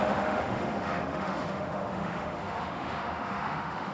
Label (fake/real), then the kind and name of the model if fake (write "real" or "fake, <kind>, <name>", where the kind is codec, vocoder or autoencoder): fake, autoencoder, DAC-VAE